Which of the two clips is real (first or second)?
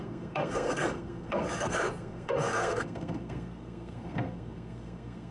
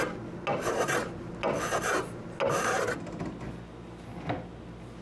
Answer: second